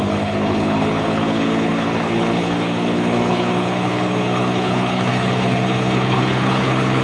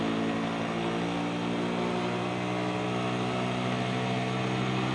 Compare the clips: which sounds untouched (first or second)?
second